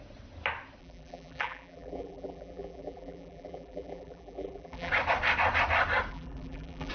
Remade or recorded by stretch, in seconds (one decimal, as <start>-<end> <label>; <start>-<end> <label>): 0.0-0.8 recorded; 0.8-4.9 remade; 4.9-6.1 recorded; 6.1-6.9 remade